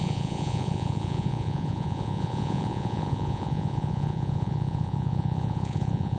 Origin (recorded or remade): remade